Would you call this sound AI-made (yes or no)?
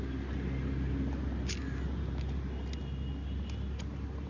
no